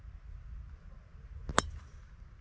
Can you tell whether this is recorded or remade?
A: recorded